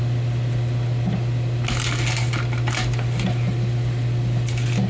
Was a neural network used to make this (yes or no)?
no